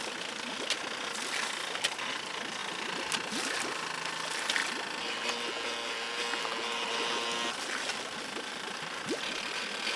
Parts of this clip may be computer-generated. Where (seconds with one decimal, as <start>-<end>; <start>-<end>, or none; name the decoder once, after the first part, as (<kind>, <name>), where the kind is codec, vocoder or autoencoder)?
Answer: none